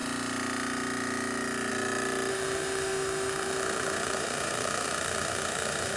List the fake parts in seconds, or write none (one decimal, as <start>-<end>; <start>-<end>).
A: 2.3-6.0